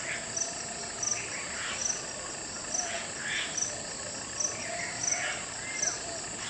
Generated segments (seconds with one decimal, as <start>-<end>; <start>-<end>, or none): none